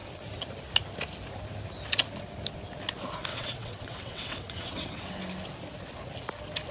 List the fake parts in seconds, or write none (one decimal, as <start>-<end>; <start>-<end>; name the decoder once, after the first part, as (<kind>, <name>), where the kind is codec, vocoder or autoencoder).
3.3-5.2 (vocoder, WaveNeXt)